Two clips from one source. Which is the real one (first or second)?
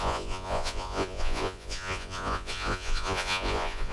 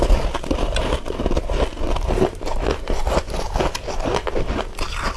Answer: second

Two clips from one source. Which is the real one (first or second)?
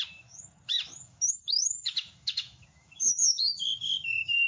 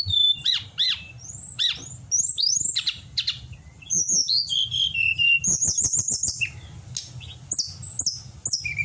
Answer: second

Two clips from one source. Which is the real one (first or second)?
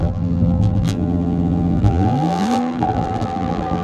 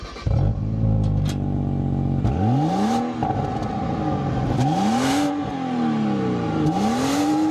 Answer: second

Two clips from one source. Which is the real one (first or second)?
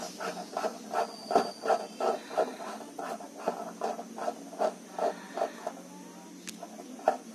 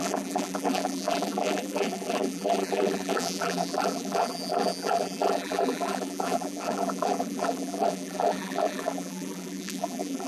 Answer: first